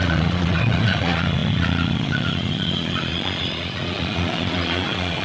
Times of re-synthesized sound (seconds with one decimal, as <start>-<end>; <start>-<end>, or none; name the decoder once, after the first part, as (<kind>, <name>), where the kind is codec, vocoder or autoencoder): 0.0-5.2 (vocoder, Vocos)